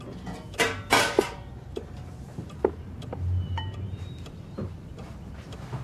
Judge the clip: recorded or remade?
remade